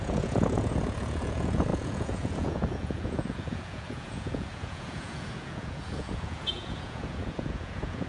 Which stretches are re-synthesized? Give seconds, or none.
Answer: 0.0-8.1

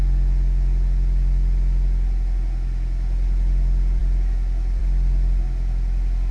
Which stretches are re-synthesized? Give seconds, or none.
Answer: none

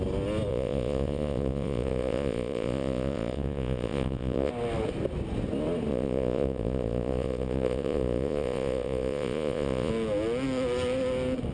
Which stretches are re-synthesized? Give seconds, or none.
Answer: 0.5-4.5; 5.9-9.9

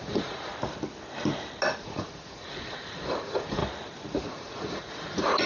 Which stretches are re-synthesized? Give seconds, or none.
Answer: 0.0-0.5; 1.8-3.6; 4.3-5.5